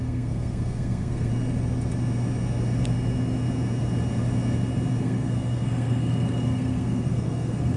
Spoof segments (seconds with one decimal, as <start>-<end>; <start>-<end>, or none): 0.0-1.3; 5.0-7.8

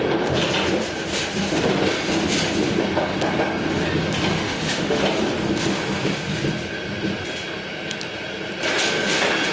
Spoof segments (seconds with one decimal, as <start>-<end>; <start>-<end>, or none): 4.3-5.0